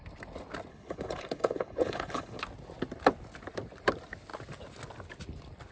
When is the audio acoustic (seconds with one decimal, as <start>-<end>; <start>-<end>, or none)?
0.0-0.7; 2.4-5.7